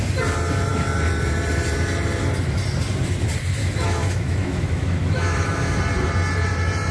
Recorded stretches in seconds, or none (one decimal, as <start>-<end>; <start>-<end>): 0.0-3.6; 5.8-6.9